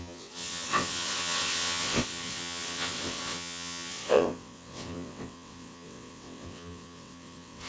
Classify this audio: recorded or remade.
remade